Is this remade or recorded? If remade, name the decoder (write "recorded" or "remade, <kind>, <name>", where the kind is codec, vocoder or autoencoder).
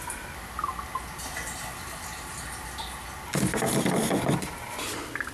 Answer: recorded